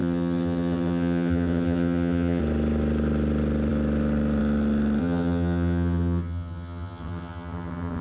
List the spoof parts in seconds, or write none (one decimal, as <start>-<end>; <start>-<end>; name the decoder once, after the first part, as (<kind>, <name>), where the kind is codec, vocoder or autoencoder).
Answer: 0.0-2.4 (vocoder, HiFi-GAN); 5.0-8.0